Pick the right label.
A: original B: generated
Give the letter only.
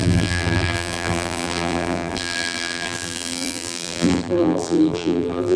B